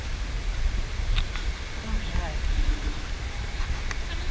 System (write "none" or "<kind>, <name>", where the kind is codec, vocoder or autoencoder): none